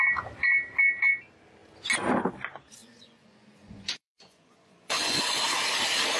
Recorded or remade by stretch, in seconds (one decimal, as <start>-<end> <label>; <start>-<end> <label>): 0.0-2.8 recorded; 2.8-5.2 remade; 5.2-6.2 recorded